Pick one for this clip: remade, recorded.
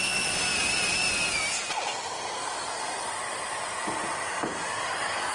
remade